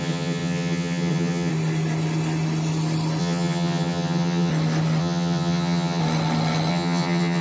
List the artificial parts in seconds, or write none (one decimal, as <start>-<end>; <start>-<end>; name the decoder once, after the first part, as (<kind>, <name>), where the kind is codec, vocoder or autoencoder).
0.0-1.5 (vocoder, HiFi-GAN); 3.2-4.5; 5.0-6.0; 6.7-7.4